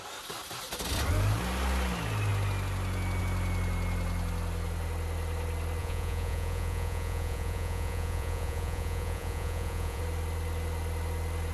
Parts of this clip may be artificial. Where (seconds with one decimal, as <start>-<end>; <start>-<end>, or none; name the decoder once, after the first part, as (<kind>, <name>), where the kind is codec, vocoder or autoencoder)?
5.8-10.0 (vocoder, Vocos)